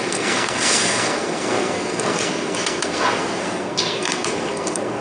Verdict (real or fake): fake